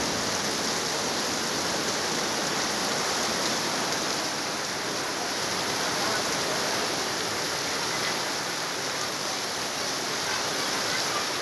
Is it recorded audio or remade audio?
recorded